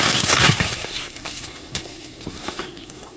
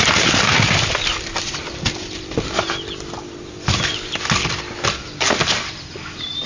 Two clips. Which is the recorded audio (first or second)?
second